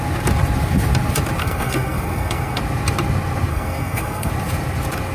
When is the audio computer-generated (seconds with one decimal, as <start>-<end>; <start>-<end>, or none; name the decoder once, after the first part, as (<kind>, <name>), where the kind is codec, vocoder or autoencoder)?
1.4-2.6 (codec, SNAC); 3.5-4.3